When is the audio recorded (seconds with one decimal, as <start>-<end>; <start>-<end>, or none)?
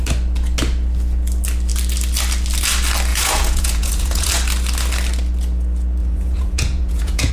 0.0-3.1; 4.3-6.0